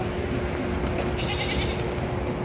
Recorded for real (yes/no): yes